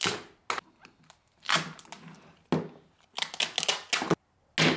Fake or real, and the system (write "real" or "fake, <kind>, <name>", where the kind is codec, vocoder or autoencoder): real